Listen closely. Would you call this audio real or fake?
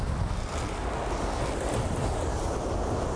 real